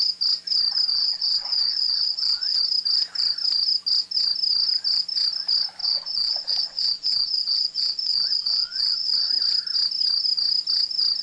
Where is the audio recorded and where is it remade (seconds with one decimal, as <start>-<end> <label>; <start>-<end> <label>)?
0.0-0.9 recorded; 0.9-2.6 remade; 2.6-5.8 recorded; 5.8-9.3 remade; 9.3-11.2 recorded